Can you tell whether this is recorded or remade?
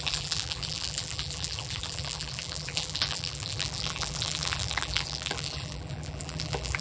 remade